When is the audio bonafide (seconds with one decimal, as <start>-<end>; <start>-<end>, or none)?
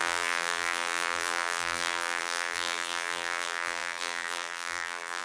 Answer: none